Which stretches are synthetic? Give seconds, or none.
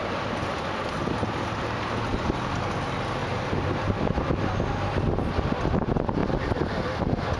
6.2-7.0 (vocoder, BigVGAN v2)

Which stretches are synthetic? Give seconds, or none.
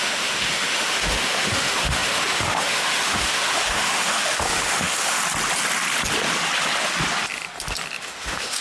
0.0-5.2 (autoencoder, DAC-VAE); 8.0-8.6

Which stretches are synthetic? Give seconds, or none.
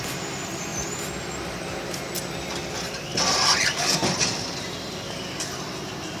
3.1-4.6 (vocoder, BigVGAN v2)